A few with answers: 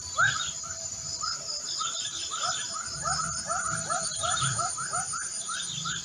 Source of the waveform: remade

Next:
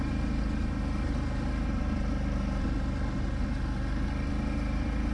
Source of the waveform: recorded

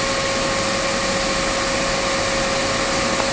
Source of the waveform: recorded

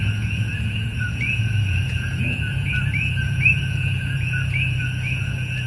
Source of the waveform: remade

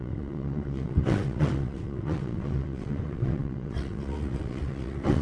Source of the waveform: remade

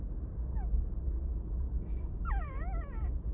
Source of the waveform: recorded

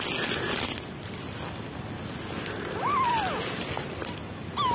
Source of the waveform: recorded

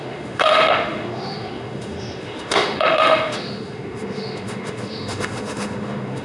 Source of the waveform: remade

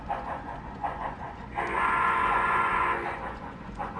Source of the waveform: remade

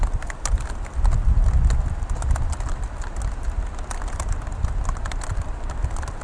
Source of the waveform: recorded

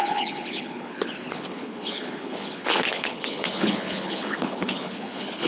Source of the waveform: remade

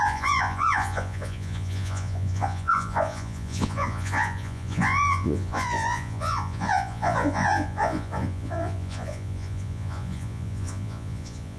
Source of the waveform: remade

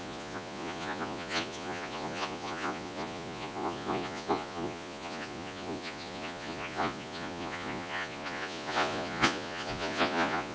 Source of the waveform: remade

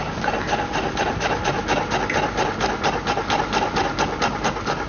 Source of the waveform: recorded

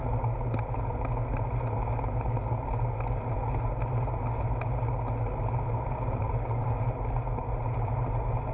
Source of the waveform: recorded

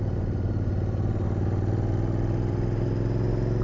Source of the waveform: recorded